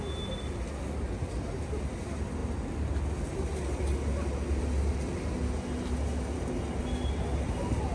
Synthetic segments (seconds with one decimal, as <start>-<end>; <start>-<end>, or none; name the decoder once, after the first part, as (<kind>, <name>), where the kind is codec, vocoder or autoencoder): none